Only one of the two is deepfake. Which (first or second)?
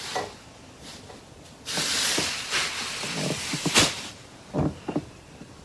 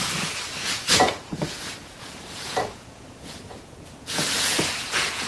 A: second